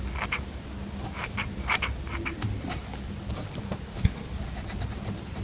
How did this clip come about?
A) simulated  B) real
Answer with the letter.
B